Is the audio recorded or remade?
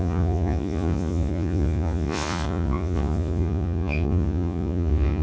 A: remade